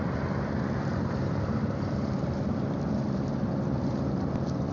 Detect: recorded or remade remade